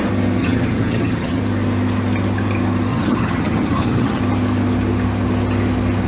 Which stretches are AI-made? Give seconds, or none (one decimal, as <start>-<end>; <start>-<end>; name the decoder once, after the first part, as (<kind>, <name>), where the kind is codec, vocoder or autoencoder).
0.4-1.4 (vocoder, HiFi-GAN); 2.9-4.2